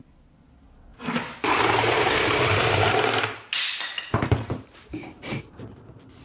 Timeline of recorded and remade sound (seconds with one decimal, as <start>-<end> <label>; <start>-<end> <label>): 0.0-0.9 recorded; 0.9-2.7 remade; 2.7-3.5 recorded; 3.5-5.8 remade; 5.8-6.2 recorded